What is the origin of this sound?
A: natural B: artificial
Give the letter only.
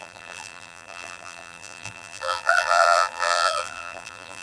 B